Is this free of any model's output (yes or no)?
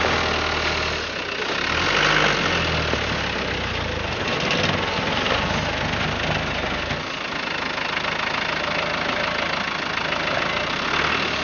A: yes